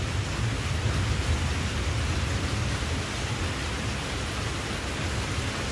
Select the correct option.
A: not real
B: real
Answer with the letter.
B